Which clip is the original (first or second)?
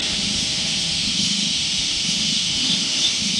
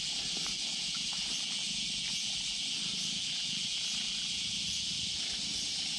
second